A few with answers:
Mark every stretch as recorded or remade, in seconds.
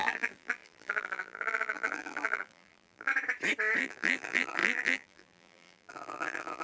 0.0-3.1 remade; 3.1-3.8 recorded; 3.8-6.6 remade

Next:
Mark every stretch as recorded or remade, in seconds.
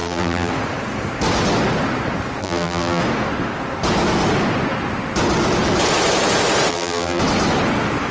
0.0-0.5 remade; 0.5-2.4 recorded; 2.4-3.0 remade; 3.0-6.7 recorded; 6.7-7.2 remade; 7.2-8.1 recorded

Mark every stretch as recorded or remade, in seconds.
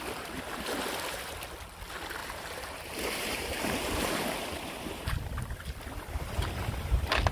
0.0-2.2 recorded; 2.2-5.1 remade; 5.1-7.3 recorded